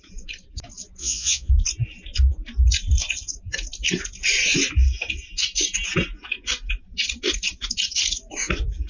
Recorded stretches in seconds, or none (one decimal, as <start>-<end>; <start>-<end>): 0.0-1.0; 1.5-8.9